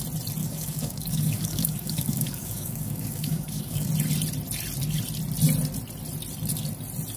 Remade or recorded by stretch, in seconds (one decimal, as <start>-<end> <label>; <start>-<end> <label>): 0.0-0.4 recorded; 0.4-3.9 remade; 3.9-7.2 recorded